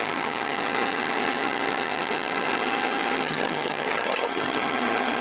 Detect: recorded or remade remade